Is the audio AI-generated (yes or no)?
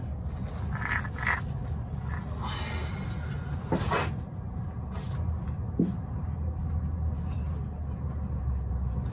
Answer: no